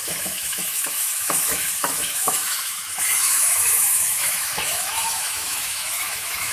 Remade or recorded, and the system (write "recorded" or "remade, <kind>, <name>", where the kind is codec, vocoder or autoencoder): remade, autoencoder, DAC-VAE